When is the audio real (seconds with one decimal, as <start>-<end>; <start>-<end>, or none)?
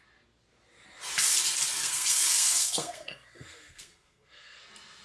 0.0-1.8; 4.6-5.0